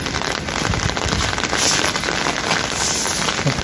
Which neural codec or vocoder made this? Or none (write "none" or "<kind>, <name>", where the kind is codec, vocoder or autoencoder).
none